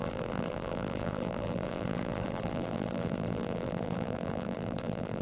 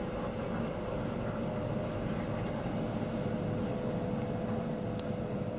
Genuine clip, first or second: second